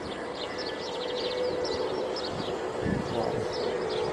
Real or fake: real